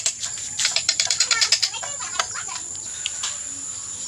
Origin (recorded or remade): remade